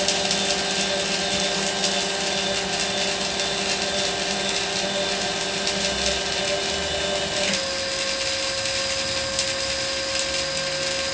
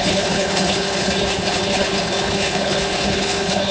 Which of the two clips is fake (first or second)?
second